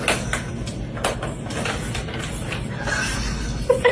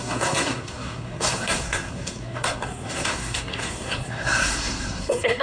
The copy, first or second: second